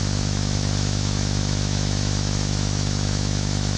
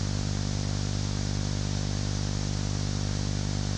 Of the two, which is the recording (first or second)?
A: second